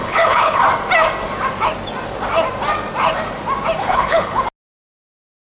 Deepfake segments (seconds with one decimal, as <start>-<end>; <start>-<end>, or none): 0.0-0.6; 3.8-4.4